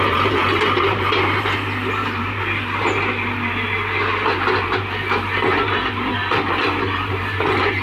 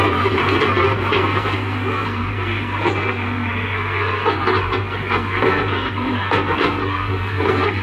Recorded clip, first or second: first